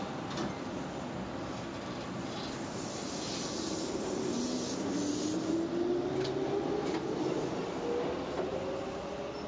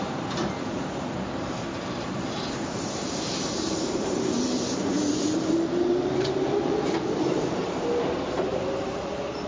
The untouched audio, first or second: first